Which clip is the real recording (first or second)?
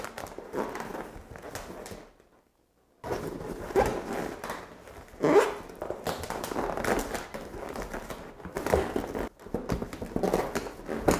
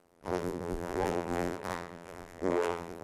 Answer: first